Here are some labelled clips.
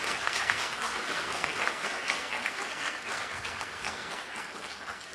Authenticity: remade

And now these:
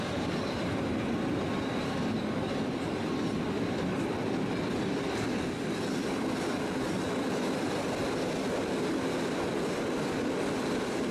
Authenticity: recorded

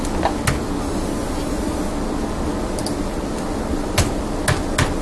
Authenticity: recorded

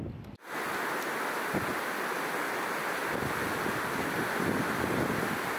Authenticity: recorded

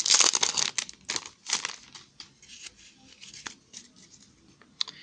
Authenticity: recorded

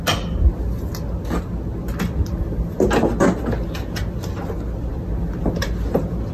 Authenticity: recorded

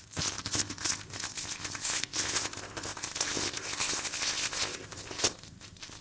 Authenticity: remade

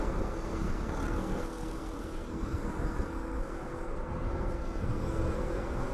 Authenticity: remade